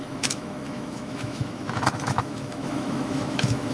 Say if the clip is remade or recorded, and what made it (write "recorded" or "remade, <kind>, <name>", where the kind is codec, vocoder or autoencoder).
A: remade, autoencoder, DAC-VAE